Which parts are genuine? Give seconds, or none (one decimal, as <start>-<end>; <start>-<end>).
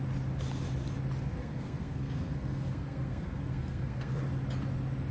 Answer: 0.0-1.4; 4.2-5.1